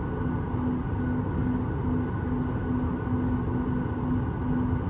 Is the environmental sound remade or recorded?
recorded